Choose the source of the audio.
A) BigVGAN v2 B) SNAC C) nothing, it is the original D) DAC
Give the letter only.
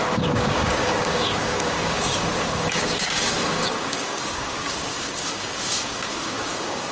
D